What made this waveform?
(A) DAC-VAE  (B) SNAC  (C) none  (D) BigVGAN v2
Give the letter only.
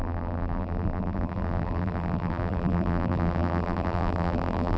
D